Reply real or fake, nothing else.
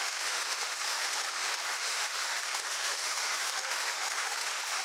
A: fake